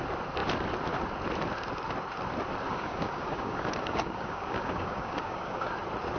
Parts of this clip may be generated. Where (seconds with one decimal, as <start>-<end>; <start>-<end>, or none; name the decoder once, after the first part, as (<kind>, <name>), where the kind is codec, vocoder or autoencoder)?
2.7-5.7 (codec, DAC)